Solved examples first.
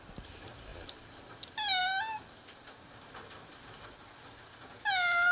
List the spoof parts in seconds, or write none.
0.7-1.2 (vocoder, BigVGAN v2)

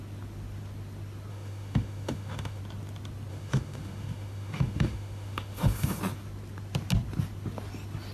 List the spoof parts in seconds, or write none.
1.3-2.6 (autoencoder, DAC-VAE); 3.3-6.0